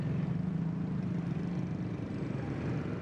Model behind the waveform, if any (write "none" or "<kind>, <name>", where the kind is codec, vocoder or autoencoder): none